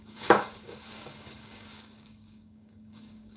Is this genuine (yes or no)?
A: no